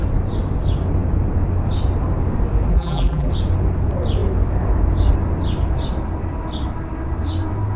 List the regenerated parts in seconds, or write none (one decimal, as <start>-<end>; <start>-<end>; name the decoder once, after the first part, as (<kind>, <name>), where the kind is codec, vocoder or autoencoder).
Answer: 2.7-3.3 (vocoder, BigVGAN v2)